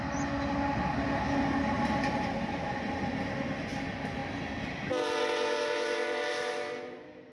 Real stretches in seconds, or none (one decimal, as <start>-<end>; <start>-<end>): 0.0-7.3